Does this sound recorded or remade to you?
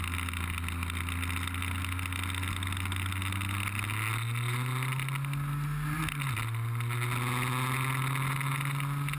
recorded